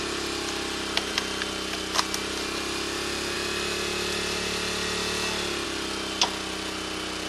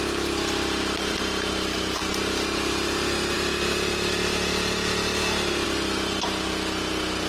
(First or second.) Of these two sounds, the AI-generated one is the second